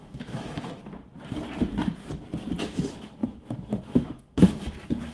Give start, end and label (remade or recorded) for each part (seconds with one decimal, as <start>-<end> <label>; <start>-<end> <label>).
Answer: 0.0-0.8 remade; 0.8-2.6 recorded; 2.6-5.1 remade